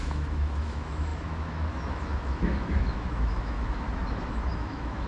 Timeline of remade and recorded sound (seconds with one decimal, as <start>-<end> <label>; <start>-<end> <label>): 0.0-5.1 remade